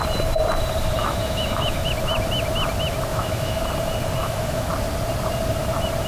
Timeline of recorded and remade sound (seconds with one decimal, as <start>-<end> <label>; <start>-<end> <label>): 0.0-1.0 recorded; 1.0-1.9 remade; 1.9-3.1 recorded; 3.1-3.6 remade; 3.6-4.2 recorded; 4.2-4.7 remade; 4.7-6.1 recorded